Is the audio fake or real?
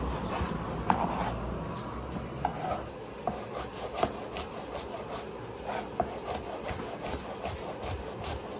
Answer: real